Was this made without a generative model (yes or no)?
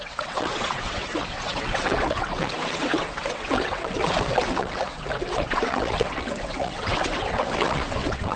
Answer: no